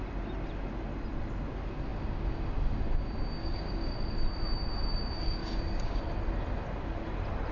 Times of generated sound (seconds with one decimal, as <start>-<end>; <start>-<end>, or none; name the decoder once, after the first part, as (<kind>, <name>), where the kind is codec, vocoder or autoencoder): 3.4-3.9 (codec, DAC); 5.4-6.0